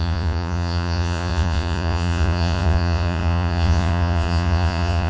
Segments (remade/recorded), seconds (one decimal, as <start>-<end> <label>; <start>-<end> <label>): 0.0-5.1 remade